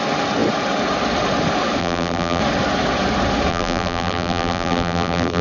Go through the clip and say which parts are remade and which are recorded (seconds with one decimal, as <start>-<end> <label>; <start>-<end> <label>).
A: 0.0-1.8 recorded; 1.8-2.4 remade; 2.4-3.5 recorded; 3.5-5.4 remade